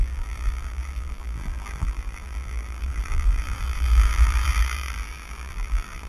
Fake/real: fake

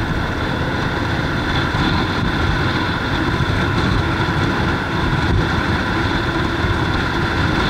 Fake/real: real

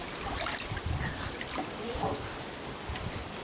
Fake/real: fake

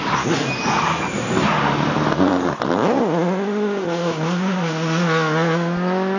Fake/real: real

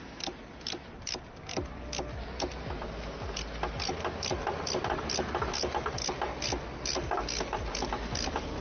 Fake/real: real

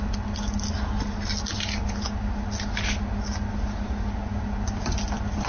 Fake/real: real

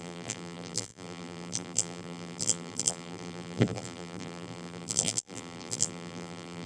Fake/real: fake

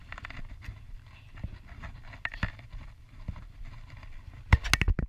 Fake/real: real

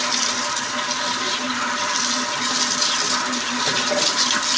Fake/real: fake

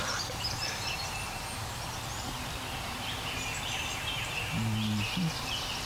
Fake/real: fake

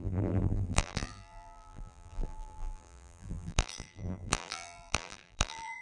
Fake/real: fake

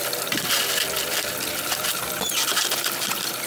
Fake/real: fake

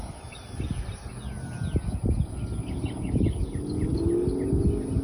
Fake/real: real